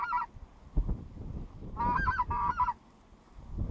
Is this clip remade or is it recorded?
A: recorded